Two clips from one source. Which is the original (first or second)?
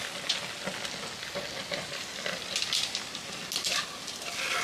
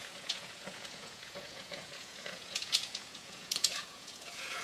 first